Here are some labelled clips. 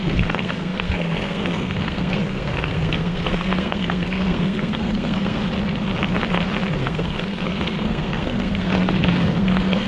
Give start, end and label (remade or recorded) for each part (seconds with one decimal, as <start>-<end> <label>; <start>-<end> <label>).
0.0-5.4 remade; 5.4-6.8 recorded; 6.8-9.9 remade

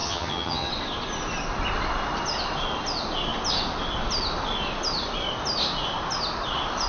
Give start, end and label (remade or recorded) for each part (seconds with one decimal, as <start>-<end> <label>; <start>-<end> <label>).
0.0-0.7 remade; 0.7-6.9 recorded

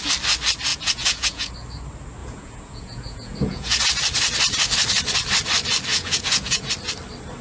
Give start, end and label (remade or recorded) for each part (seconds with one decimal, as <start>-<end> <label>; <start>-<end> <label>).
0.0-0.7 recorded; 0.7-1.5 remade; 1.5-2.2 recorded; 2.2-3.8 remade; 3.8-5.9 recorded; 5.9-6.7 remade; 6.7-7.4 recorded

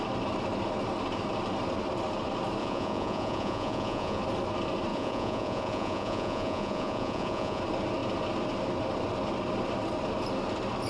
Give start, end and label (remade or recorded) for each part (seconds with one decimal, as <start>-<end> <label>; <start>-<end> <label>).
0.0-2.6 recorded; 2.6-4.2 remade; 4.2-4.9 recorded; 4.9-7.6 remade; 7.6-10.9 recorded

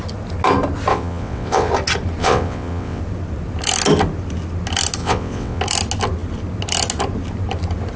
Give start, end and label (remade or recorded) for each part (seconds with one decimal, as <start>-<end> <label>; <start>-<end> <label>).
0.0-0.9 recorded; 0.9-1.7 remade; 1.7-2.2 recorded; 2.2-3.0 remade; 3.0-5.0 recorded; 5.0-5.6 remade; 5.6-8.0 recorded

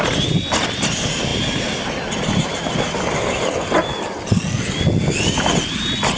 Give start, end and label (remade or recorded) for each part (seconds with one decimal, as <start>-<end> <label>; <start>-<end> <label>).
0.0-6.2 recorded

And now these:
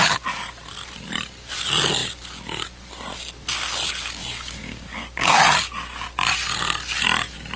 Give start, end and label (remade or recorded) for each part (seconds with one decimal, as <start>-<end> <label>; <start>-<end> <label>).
0.0-4.2 recorded; 4.2-5.4 remade; 5.4-7.6 recorded